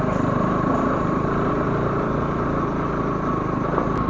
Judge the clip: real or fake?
real